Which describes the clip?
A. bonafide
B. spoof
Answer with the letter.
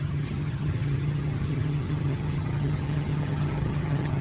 B